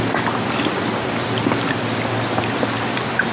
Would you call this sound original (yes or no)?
yes